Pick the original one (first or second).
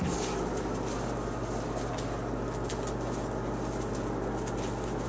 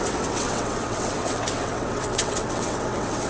first